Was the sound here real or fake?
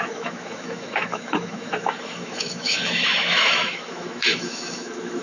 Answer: fake